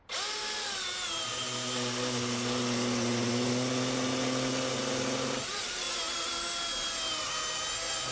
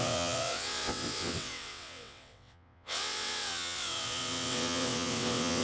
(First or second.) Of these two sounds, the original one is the first